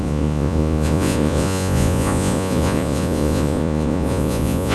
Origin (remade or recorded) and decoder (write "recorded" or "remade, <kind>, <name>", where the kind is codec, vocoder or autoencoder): remade, vocoder, Vocos